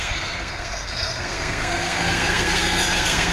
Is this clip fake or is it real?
fake